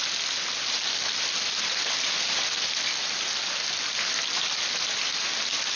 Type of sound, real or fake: real